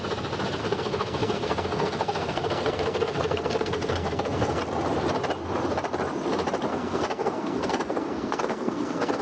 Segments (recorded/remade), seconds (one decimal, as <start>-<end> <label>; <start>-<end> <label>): 0.0-0.6 recorded; 0.6-4.6 remade; 4.6-6.7 recorded; 6.7-9.2 remade